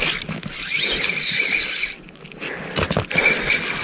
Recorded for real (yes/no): yes